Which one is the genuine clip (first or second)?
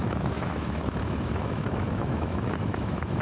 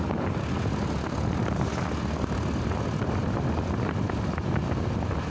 second